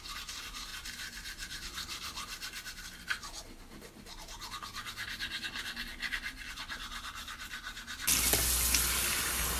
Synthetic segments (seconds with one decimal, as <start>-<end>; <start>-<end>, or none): none